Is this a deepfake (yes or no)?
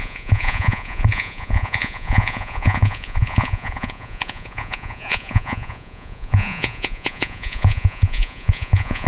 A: yes